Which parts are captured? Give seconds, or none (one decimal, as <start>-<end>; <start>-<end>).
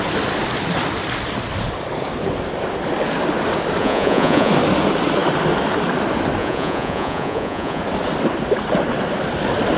0.0-3.8; 4.5-6.4; 7.8-9.8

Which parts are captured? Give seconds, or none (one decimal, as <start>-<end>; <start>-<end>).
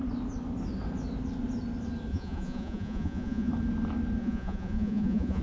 0.0-2.1; 3.5-4.2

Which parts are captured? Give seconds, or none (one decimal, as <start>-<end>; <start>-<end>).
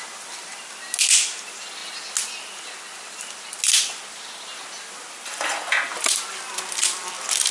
0.0-7.5